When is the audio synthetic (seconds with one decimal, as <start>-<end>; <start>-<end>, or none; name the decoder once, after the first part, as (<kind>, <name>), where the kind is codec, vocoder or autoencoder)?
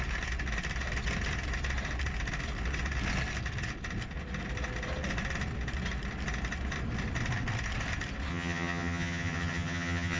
8.3-10.2 (vocoder, HiFi-GAN)